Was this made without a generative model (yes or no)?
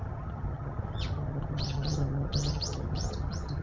no